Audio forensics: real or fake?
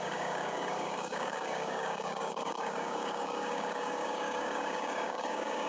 fake